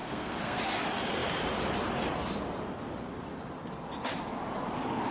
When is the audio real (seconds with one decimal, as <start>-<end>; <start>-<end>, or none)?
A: 0.6-5.1